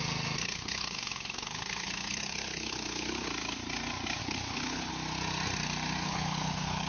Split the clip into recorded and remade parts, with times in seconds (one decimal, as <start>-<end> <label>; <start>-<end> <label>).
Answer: 0.0-0.4 recorded; 0.4-3.3 remade; 3.3-4.2 recorded; 4.2-4.9 remade; 4.9-6.0 recorded; 6.0-6.9 remade